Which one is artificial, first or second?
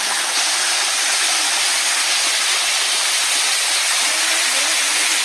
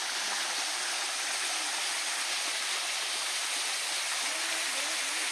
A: first